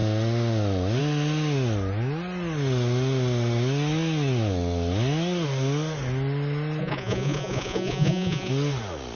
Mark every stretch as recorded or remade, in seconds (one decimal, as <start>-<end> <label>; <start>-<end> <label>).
0.0-6.8 recorded; 6.8-8.5 remade; 8.5-9.2 recorded